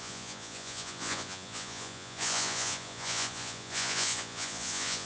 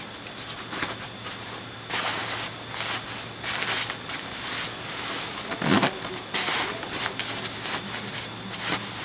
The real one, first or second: second